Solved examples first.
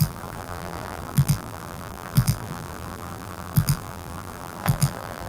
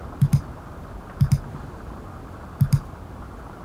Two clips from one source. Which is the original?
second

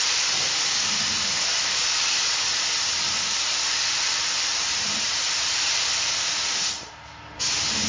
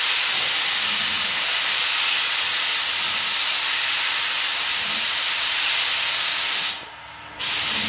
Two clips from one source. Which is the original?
second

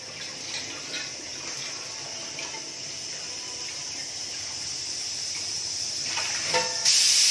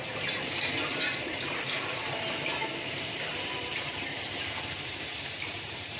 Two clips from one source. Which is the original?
first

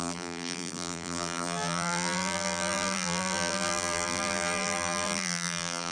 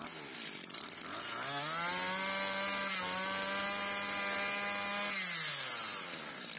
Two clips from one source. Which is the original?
second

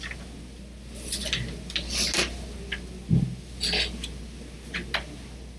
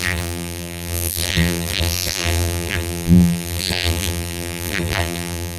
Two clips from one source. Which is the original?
first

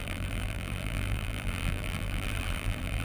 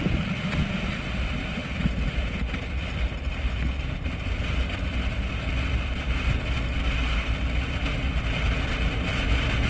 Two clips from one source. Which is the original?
second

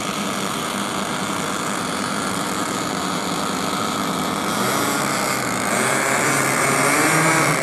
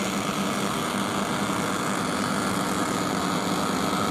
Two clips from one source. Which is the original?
second